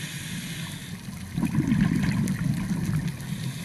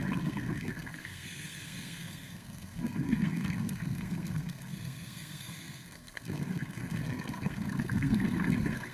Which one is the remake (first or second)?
second